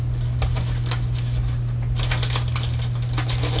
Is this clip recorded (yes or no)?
yes